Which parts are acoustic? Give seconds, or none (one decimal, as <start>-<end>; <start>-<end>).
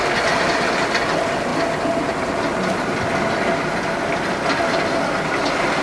0.0-5.8